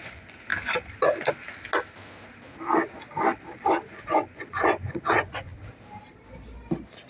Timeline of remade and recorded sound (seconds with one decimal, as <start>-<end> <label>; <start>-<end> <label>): 0.0-0.5 remade; 0.5-3.7 recorded; 3.7-5.5 remade; 5.5-7.1 recorded